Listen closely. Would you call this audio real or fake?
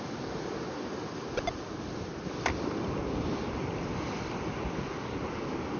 real